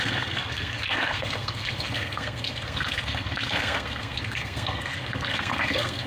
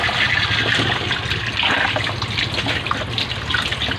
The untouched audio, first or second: second